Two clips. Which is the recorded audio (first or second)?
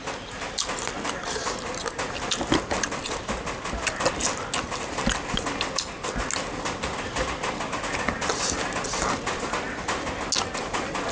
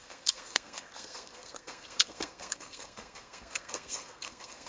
first